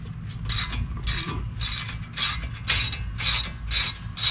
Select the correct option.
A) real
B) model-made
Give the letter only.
A